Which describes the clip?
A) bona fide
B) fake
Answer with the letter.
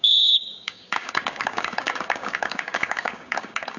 B